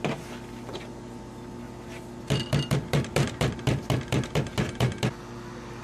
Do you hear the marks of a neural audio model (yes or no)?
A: no